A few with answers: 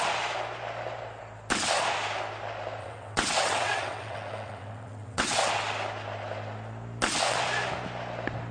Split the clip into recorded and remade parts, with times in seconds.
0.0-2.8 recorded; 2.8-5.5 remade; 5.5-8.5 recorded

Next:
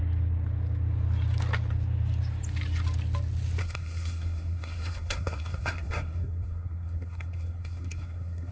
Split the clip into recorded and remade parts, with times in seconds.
0.0-3.6 recorded; 3.6-8.5 remade

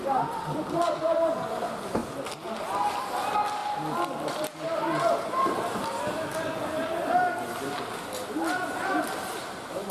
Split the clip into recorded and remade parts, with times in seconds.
0.0-9.9 recorded

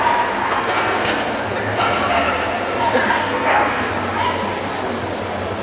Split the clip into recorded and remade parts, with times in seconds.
0.0-0.4 recorded; 0.4-1.3 remade; 1.3-3.2 recorded; 3.2-3.9 remade; 3.9-5.6 recorded

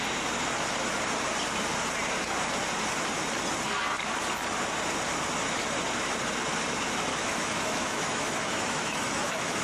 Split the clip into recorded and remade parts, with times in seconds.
0.0-7.1 recorded; 7.1-9.6 remade

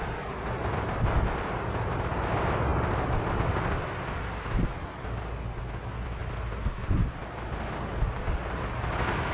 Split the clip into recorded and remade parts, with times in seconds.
0.0-9.3 recorded

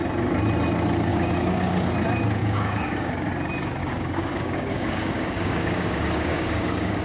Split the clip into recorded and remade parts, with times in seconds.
0.0-1.1 recorded; 1.1-1.9 remade; 1.9-2.4 recorded; 2.4-3.3 remade; 3.3-3.8 recorded; 3.8-7.0 remade

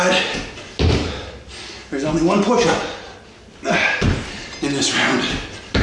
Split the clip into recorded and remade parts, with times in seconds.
0.0-5.8 recorded